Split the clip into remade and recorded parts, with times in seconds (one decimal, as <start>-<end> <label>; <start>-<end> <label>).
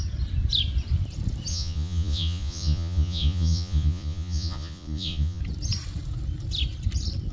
0.0-1.5 recorded; 1.5-5.4 remade; 5.4-7.3 recorded